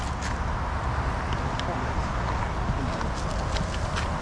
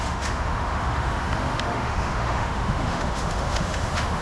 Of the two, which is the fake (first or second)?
second